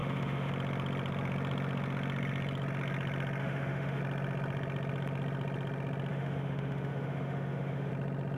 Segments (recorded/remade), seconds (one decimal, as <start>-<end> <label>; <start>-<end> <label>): 0.0-0.5 remade; 0.5-3.4 recorded; 3.4-4.0 remade; 4.0-6.1 recorded; 6.1-7.9 remade; 7.9-8.4 recorded